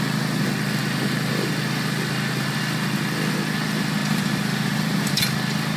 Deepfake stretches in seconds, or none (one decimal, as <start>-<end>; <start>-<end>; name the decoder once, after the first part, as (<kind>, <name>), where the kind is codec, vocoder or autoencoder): 4.0-5.3 (vocoder, BigVGAN v2)